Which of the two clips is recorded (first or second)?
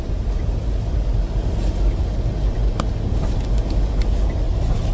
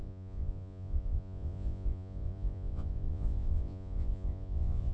first